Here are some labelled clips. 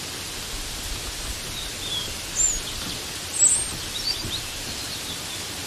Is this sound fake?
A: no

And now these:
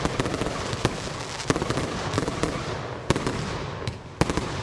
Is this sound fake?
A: no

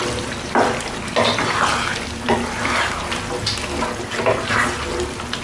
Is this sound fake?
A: no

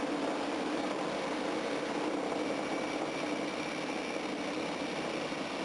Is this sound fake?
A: no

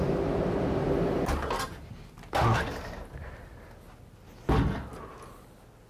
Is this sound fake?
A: no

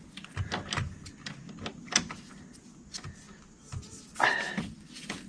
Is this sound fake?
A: no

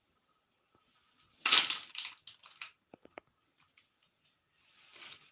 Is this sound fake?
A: no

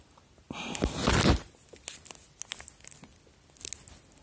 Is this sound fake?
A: no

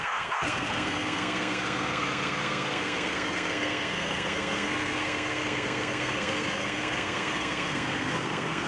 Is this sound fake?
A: yes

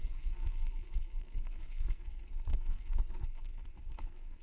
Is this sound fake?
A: yes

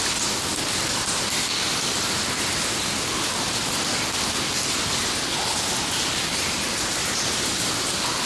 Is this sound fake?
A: no